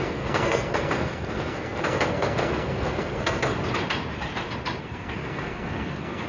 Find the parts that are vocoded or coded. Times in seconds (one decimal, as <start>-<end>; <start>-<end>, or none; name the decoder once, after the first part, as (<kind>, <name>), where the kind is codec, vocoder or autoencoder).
0.0-3.5 (codec, SNAC); 4.8-6.3